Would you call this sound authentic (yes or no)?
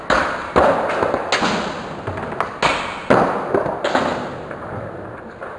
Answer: yes